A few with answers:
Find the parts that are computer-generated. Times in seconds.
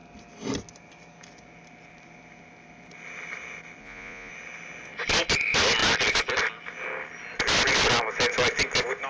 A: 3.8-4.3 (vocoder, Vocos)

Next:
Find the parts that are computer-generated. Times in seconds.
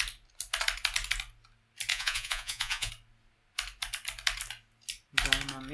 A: 1.9-2.9 (vocoder, Vocos)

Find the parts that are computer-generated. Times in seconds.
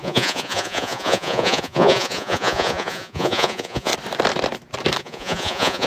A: 0.0-3.9 (vocoder, Vocos); 5.0-5.9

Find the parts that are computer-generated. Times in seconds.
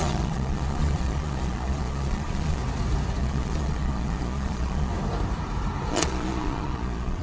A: 0.0-2.6 (vocoder, Vocos); 3.2-4.9; 5.9-7.2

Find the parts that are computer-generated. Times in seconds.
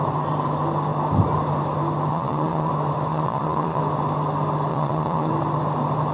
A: 2.1-2.7 (vocoder, Vocos); 3.1-3.8; 4.7-5.3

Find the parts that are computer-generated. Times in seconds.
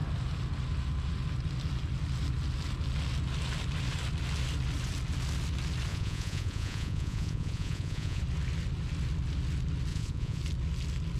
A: 5.9-8.2 (vocoder, Vocos); 9.9-10.4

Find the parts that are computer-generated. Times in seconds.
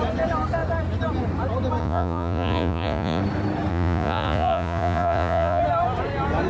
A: 1.8-3.2 (vocoder, Vocos); 3.7-5.6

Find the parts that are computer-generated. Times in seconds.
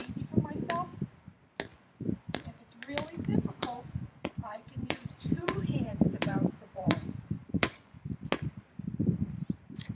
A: 1.7-2.6 (vocoder, Vocos); 3.3-8.0